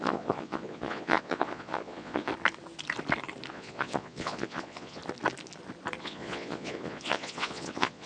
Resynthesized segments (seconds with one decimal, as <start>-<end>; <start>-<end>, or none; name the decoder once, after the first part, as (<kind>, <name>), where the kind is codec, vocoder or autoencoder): 0.0-2.3 (vocoder, Vocos); 3.5-5.0; 6.0-8.1